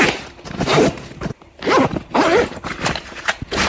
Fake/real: real